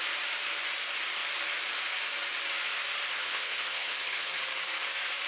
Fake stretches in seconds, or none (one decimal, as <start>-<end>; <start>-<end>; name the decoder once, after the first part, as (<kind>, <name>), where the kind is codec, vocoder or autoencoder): 3.1-4.3 (codec, HILCodec)